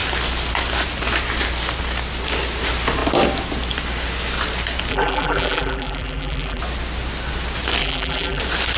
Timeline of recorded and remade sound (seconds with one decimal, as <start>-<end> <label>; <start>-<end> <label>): 0.0-4.9 recorded; 4.9-6.6 remade; 6.6-7.8 recorded; 7.8-8.4 remade; 8.4-8.8 recorded